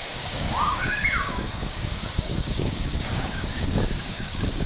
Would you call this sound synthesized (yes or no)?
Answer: yes